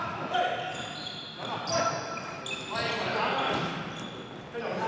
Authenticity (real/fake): real